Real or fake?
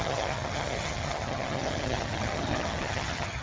fake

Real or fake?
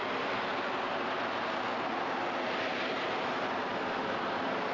real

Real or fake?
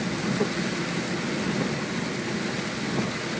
real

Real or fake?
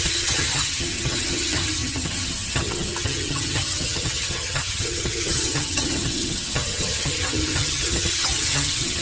fake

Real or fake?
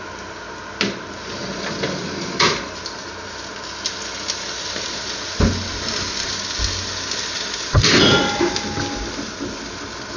real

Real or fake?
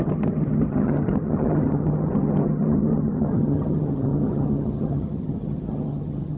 fake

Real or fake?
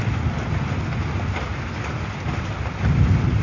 real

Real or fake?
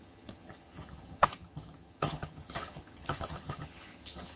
fake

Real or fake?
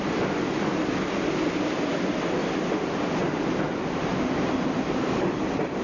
real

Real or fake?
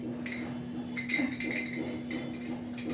real